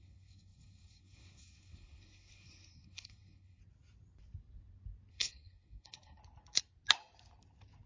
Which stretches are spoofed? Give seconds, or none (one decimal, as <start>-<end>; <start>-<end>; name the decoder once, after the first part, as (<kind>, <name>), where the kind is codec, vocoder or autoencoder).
0.0-3.6 (codec, SNAC); 5.1-6.2